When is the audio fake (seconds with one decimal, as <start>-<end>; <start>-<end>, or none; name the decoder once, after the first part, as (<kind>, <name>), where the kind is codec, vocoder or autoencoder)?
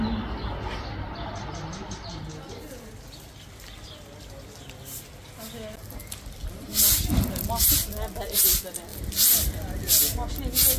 6.4-7.4 (vocoder, BigVGAN v2)